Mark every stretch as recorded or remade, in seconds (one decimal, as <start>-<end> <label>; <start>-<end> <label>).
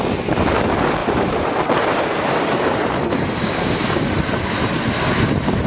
0.0-1.0 recorded; 1.0-4.4 remade; 4.4-5.7 recorded